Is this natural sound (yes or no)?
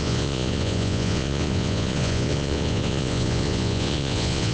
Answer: no